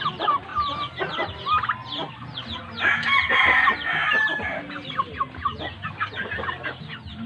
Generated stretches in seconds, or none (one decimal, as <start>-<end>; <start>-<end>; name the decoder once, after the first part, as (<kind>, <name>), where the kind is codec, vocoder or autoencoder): none